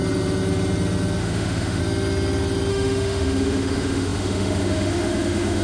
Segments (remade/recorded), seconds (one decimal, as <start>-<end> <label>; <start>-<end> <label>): 0.0-1.2 recorded; 1.2-1.8 remade; 1.8-2.7 recorded; 2.7-5.6 remade